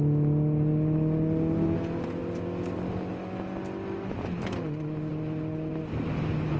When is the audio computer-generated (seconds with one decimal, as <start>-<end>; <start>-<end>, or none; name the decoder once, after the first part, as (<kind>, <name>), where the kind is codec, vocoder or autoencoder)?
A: none